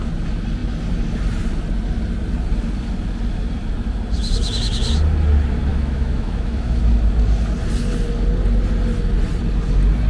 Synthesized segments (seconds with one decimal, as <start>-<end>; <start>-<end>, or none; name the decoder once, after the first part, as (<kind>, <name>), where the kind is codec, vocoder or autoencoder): 5.7-6.8 (autoencoder, DAC-VAE)